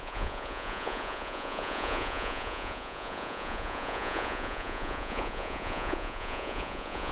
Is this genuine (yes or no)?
no